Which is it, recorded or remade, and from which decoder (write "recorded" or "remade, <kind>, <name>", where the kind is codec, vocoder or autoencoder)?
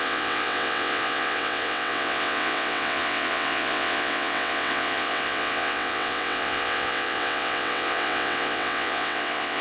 remade, vocoder, WaveNeXt